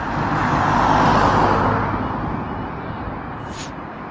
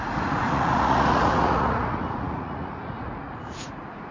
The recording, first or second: first